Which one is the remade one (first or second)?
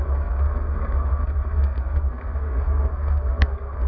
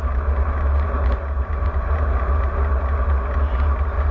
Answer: first